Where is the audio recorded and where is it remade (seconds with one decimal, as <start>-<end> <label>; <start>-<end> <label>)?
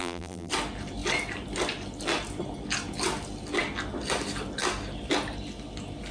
0.0-0.5 remade; 0.5-6.1 recorded